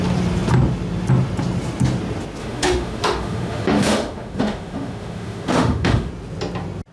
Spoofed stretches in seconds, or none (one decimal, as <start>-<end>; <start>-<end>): 2.4-6.1